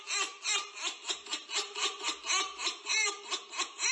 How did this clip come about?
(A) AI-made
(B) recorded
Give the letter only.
B